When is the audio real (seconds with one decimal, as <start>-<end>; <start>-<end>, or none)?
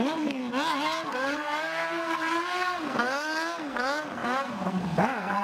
0.4-1.1